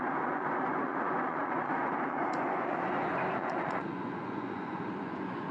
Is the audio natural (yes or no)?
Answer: no